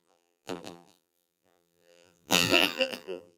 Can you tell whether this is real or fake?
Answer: fake